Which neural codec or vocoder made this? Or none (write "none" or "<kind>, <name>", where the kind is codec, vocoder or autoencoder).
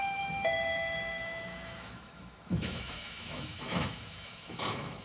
autoencoder, DAC-VAE